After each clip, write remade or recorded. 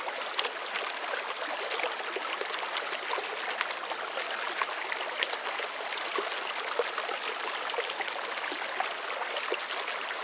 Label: recorded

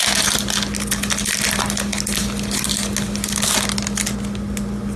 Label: recorded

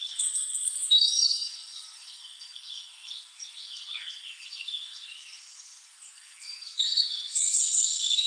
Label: remade